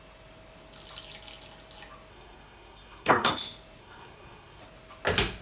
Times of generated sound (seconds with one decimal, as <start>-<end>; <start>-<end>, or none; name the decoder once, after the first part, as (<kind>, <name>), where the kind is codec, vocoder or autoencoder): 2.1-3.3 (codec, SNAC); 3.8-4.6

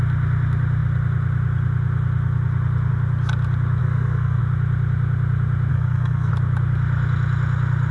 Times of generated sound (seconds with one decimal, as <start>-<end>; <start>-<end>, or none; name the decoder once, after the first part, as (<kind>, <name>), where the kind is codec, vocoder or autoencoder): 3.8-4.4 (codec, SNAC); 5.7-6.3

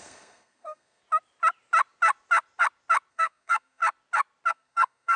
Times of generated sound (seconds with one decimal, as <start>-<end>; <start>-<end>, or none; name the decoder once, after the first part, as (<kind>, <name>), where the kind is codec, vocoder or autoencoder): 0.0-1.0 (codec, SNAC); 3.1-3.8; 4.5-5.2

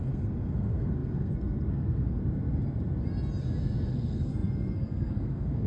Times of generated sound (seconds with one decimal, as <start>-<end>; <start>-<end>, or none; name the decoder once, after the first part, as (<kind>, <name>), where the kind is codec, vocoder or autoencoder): 0.0-2.2 (codec, SNAC); 3.9-5.7